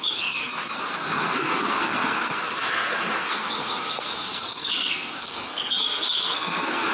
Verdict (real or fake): fake